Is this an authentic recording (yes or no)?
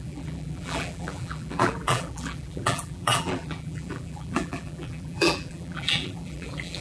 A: no